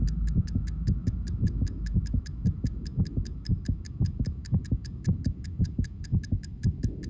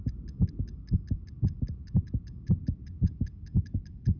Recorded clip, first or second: second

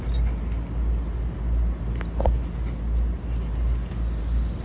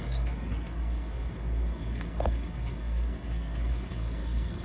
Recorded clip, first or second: first